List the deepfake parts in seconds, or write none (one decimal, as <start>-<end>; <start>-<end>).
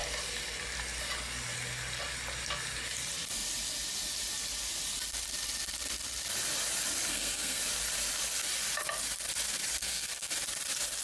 7.1-7.6; 9.8-10.3